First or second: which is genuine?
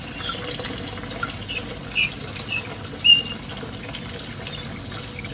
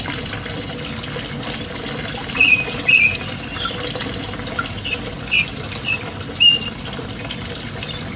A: first